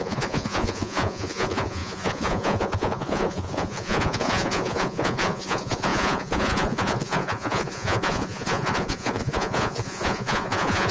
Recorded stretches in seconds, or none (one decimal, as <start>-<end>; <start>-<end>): none